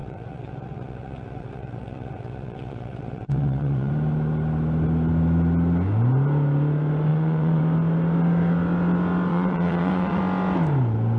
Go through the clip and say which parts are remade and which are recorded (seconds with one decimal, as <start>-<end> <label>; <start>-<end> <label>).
0.0-3.9 remade; 3.9-7.1 recorded; 7.1-7.6 remade; 7.6-9.3 recorded; 9.3-10.2 remade; 10.2-11.2 recorded